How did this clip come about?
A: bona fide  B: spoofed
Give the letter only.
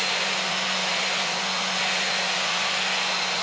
B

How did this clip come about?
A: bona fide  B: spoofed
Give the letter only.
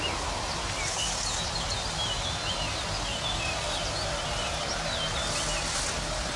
A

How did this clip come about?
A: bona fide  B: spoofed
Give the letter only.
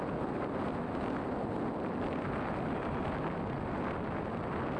A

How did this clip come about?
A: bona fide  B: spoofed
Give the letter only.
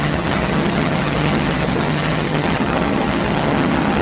B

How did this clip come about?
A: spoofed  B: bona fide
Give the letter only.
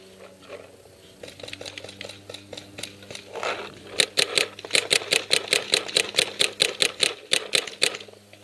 B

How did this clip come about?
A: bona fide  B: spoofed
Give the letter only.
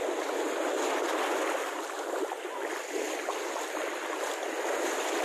A